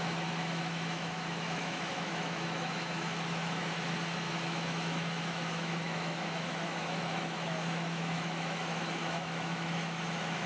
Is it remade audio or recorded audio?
remade